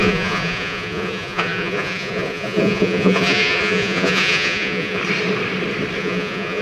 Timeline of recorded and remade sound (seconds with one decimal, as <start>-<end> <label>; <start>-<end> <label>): 0.0-5.0 remade; 5.0-6.0 recorded; 6.0-6.6 remade